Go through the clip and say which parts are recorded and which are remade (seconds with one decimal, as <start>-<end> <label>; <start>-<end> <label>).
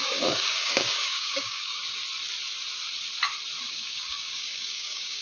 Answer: 0.0-1.8 remade; 1.8-3.7 recorded; 3.7-5.2 remade